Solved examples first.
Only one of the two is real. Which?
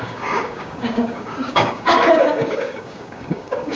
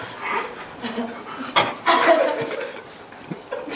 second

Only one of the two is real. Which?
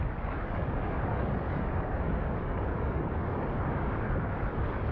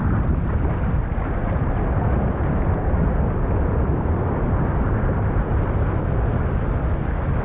second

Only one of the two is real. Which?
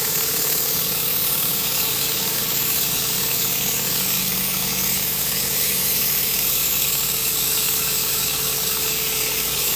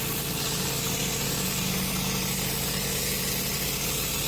second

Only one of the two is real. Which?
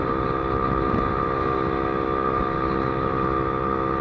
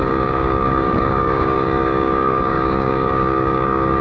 first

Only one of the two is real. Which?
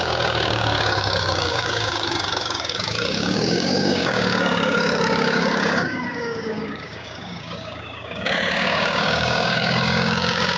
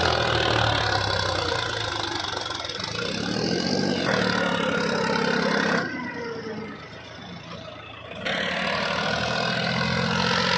second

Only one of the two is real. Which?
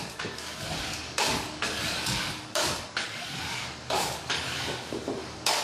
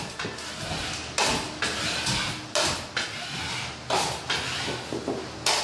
second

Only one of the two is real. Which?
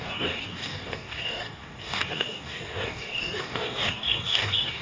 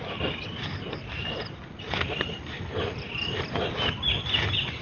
second